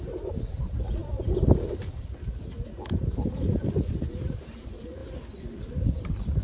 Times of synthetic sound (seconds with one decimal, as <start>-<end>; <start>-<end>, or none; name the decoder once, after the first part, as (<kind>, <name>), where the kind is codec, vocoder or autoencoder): 0.0-5.0 (vocoder, BigVGAN v2); 5.8-6.4